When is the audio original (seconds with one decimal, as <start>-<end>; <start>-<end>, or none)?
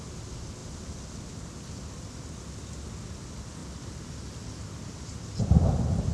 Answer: 0.0-0.6; 2.9-3.6